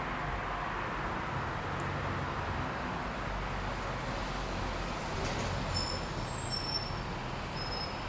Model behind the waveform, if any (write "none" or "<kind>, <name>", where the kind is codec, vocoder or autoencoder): none